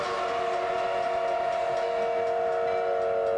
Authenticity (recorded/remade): recorded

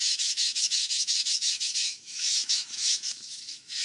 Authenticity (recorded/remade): remade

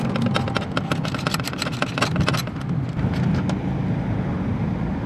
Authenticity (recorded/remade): recorded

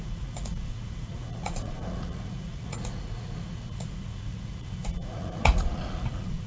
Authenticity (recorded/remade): remade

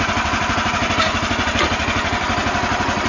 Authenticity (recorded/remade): recorded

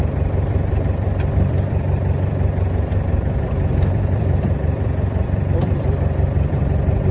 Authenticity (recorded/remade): remade